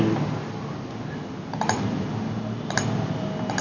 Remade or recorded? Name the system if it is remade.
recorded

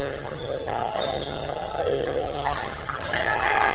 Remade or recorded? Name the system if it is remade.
remade, vocoder, HiFi-GAN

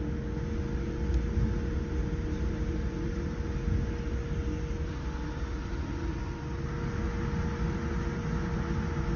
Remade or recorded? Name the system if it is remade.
recorded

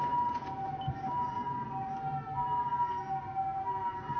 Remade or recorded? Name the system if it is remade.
recorded